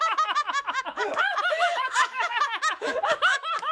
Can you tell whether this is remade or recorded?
remade